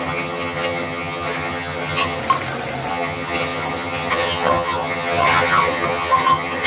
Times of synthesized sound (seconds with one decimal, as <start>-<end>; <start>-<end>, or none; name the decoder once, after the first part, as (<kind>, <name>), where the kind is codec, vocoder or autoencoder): 0.0-2.2 (vocoder, HiFi-GAN); 2.9-6.7